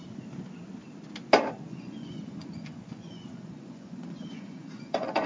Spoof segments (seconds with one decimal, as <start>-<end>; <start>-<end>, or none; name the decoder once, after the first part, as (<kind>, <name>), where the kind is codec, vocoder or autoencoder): 1.7-5.3 (vocoder, Vocos)